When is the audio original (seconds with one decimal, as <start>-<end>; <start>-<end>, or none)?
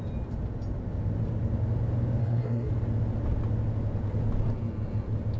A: 0.0-2.2; 2.7-5.4